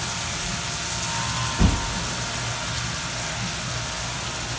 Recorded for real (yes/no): yes